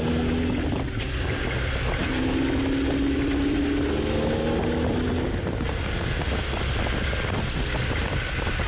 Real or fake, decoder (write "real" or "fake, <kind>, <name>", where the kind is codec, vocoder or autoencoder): real